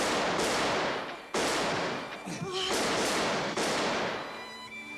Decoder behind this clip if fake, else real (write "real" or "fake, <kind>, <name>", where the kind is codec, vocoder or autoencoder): real